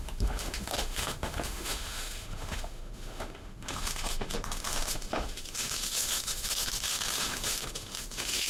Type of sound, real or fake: fake